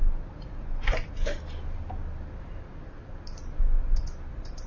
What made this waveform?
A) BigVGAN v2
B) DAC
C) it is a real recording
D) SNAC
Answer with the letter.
C